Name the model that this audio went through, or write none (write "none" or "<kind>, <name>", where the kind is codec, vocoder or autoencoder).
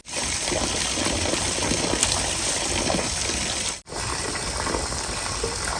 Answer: none